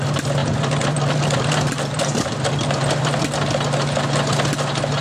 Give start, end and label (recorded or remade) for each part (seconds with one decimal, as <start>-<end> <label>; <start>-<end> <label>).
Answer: 0.0-0.4 recorded; 0.4-3.4 remade; 3.4-5.0 recorded